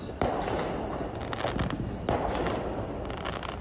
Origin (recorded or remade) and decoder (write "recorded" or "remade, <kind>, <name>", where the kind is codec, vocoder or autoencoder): recorded